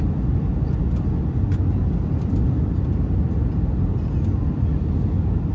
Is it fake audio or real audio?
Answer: real